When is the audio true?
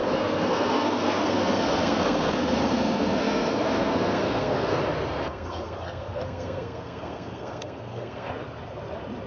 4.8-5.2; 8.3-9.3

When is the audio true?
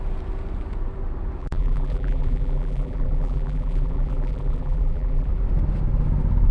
0.0-1.4; 5.3-6.5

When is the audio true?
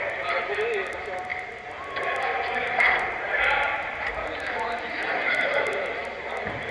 0.0-6.7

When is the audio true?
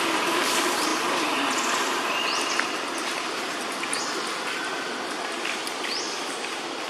0.0-6.9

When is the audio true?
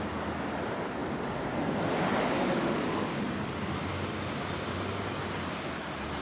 0.0-6.2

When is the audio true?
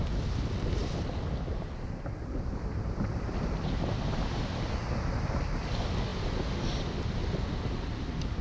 0.0-0.8; 3.3-8.4